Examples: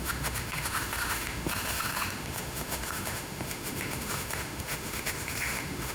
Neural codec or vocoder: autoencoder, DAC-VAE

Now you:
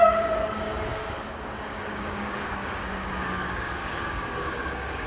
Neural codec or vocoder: codec, DAC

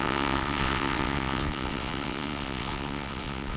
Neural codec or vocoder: vocoder, WaveNeXt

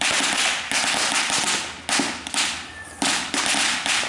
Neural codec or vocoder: none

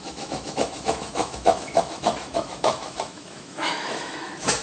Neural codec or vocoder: autoencoder, DAC-VAE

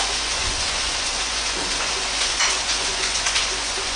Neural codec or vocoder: vocoder, Vocos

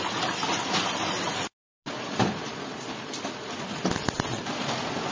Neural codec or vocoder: none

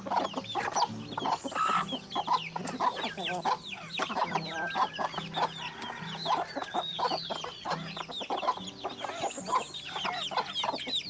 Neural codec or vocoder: none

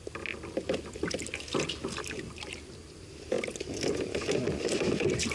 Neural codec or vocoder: none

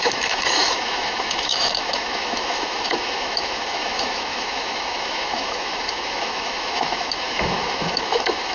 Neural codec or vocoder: autoencoder, DAC-VAE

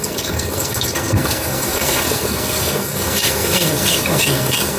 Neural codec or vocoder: codec, SNAC